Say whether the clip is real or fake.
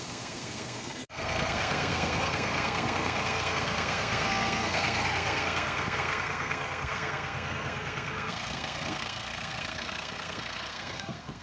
fake